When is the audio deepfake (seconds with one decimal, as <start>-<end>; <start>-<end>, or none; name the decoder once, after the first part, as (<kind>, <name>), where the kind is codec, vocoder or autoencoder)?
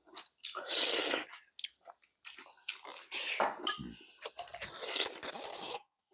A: 5.5-6.1 (codec, DAC)